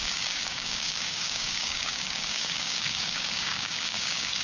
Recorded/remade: remade